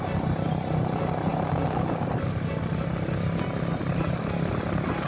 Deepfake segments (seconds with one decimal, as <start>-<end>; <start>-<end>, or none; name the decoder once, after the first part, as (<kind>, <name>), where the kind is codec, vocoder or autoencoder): none